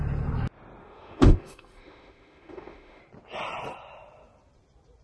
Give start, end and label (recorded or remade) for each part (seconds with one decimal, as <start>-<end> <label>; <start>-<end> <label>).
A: 0.0-0.8 recorded; 0.8-3.0 remade; 3.0-5.0 recorded

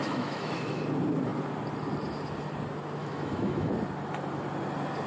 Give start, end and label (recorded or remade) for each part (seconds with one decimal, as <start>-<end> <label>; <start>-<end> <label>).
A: 0.0-0.8 remade; 0.8-3.0 recorded; 3.0-3.7 remade; 3.7-5.1 recorded

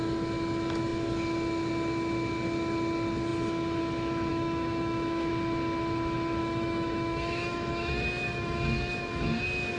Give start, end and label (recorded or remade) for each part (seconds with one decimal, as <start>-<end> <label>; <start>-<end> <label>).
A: 0.0-4.3 recorded; 4.3-5.3 remade; 5.3-6.4 recorded; 6.4-9.4 remade; 9.4-9.8 recorded

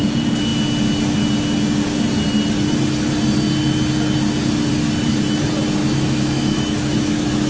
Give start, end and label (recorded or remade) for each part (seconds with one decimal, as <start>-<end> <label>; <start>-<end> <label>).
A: 0.0-5.8 recorded; 5.8-7.5 remade

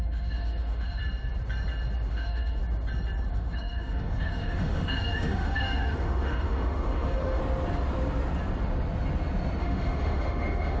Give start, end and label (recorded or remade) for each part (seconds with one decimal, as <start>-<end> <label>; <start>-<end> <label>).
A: 0.0-1.0 remade; 1.0-2.1 recorded; 2.1-2.6 remade; 2.6-3.3 recorded; 3.3-7.4 remade; 7.4-9.6 recorded; 9.6-10.8 remade